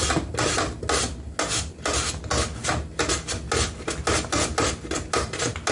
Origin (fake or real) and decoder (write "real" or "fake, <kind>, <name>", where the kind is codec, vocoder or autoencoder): real